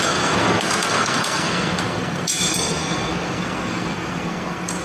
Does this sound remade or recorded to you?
remade